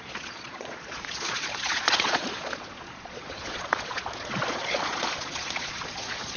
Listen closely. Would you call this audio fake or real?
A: fake